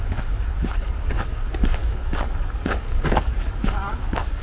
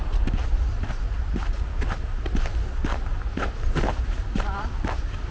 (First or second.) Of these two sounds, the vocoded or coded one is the first